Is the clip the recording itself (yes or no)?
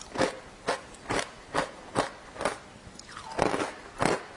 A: yes